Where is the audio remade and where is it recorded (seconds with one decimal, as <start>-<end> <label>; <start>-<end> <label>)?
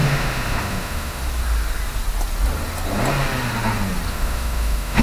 0.0-1.2 remade; 1.2-4.1 recorded; 4.1-5.0 remade